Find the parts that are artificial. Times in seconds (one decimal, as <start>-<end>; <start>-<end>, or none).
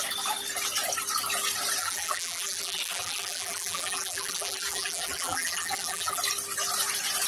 1.8-6.2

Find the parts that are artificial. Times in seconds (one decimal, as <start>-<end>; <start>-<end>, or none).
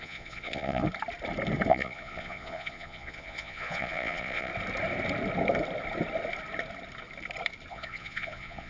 0.0-0.8; 1.7-4.5; 7.7-8.7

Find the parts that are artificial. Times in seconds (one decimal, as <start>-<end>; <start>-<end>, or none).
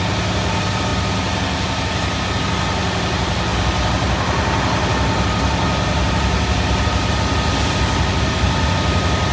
none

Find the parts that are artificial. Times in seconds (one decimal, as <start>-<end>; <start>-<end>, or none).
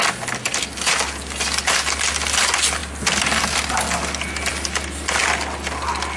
none